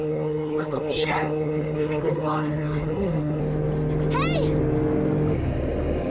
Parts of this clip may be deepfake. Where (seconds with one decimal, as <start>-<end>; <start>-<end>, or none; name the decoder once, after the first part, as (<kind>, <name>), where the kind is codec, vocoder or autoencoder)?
0.0-3.4 (codec, SNAC)